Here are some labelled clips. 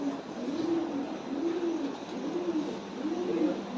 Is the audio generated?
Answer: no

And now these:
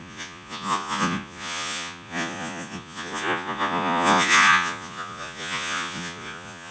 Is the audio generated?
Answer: yes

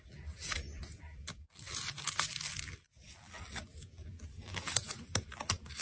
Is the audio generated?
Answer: no